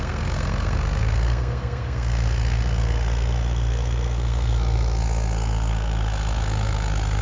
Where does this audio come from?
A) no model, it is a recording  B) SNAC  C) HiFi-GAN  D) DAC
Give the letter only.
B